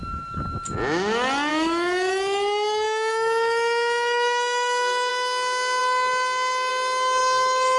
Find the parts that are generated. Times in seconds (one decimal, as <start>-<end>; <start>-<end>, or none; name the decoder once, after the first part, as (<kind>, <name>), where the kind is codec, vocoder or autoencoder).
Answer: 1.5-5.1 (autoencoder, DAC-VAE); 7.2-7.8

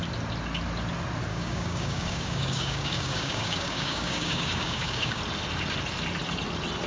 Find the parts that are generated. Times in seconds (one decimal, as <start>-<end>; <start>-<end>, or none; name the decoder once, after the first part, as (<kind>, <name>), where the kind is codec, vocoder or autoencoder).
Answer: 1.3-5.2 (codec, DAC)

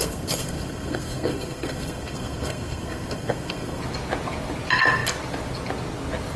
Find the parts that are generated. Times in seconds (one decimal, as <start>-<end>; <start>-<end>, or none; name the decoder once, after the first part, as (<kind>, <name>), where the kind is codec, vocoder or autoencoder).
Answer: 0.0-3.8 (codec, SNAC)

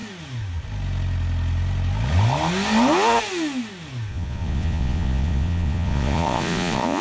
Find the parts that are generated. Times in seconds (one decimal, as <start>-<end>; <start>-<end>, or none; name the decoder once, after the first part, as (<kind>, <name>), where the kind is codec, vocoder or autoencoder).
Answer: 4.1-7.0 (vocoder, Vocos)

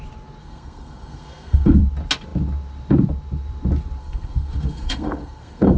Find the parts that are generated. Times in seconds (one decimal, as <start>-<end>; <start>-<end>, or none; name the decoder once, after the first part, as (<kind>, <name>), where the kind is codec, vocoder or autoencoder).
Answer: 0.4-1.8 (codec, SNAC); 4.0-5.8

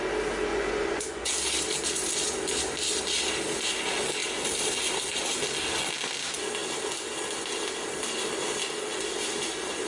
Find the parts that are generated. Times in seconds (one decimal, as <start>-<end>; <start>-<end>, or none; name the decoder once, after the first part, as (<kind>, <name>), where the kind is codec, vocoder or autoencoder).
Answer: 0.5-1.3 (vocoder, Vocos)

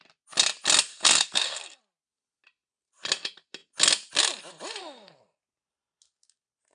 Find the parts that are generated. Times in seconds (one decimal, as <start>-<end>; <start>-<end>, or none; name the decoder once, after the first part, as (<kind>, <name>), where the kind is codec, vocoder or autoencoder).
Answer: 0.9-1.8 (codec, SNAC); 4.8-5.4

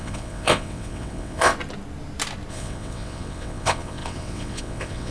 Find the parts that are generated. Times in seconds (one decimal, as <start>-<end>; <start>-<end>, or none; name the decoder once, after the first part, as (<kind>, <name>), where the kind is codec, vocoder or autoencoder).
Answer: 0.0-1.5 (vocoder, WaveNeXt); 2.5-5.1